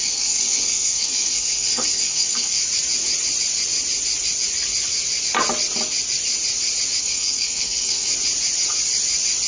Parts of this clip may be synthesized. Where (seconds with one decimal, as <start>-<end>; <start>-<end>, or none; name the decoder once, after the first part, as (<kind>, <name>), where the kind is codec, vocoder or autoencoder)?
0.0-2.6 (codec, SNAC); 7.0-8.1

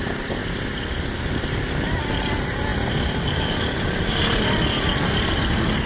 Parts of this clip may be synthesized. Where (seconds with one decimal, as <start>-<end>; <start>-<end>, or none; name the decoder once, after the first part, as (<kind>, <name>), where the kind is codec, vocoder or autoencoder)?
none